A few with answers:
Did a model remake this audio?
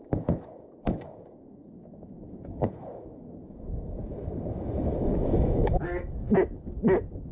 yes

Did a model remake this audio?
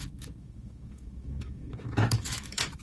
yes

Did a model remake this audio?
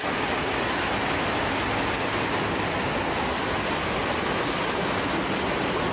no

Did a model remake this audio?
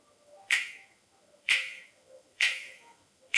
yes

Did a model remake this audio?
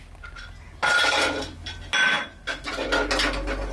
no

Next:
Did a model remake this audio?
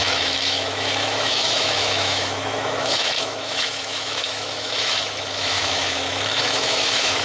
yes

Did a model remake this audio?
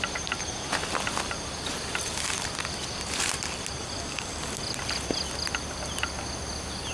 no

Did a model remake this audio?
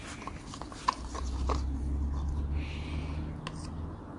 no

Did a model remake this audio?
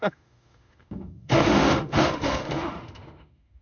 yes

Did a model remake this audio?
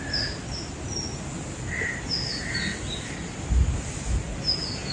no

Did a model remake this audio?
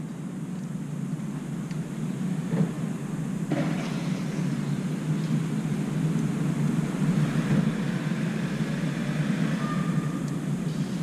no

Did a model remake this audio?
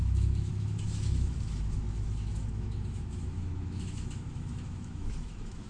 yes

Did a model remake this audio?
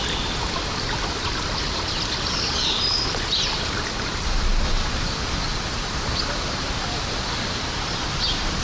no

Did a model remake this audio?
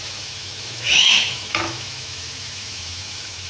yes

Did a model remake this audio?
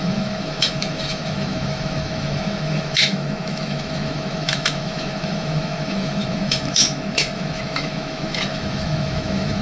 yes